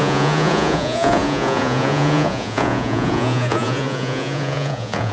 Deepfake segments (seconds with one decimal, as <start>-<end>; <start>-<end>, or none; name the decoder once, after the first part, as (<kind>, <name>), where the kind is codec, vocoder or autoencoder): 0.0-5.1 (vocoder, Vocos)